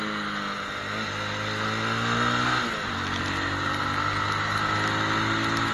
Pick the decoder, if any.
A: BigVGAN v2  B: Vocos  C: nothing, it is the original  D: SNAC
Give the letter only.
C